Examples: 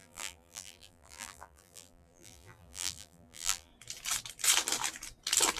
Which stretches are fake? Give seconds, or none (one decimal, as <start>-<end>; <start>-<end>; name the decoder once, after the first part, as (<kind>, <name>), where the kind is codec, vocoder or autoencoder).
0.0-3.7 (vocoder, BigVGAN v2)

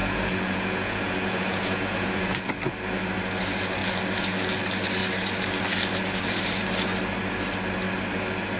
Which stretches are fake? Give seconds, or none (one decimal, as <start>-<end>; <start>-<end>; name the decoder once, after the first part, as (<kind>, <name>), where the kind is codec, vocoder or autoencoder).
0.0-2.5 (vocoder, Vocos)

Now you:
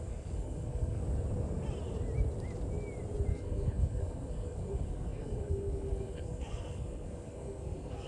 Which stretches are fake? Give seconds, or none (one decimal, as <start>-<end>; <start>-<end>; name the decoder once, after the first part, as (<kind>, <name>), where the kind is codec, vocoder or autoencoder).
0.0-1.0 (codec, SNAC); 3.3-8.1

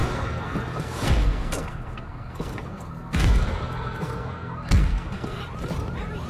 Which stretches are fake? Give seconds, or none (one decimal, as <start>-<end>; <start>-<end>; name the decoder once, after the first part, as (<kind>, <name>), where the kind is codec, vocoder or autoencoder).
0.0-5.4 (codec, SNAC)

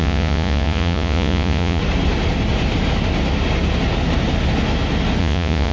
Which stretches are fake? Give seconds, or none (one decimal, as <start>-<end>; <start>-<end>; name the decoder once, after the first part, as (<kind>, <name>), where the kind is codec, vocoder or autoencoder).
0.0-1.8 (vocoder, Vocos); 5.2-5.7